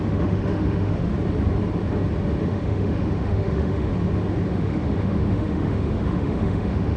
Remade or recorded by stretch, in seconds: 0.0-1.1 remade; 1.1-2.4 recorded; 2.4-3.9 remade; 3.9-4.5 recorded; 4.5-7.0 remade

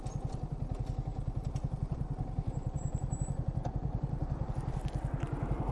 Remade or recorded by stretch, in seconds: 0.0-1.1 recorded; 1.1-4.5 remade; 4.5-5.7 recorded